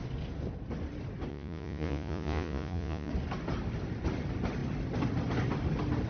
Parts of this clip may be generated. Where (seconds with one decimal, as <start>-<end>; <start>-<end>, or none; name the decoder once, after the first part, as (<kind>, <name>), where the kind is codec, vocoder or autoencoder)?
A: 1.3-3.1 (vocoder, Vocos)